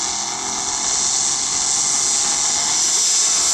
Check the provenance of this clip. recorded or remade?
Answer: recorded